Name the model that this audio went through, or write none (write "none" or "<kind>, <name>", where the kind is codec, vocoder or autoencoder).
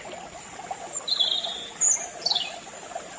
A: none